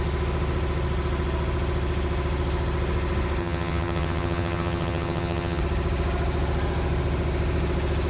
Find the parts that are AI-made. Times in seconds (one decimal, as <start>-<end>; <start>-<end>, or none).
3.4-5.6